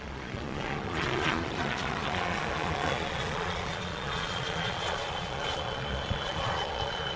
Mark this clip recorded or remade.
remade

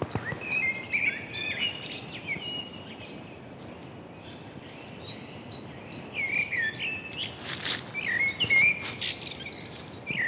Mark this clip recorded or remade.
recorded